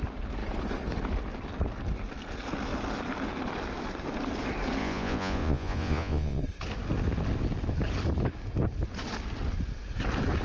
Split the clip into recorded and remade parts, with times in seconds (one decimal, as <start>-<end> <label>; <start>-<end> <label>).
0.0-4.8 recorded; 4.8-6.4 remade; 6.4-10.4 recorded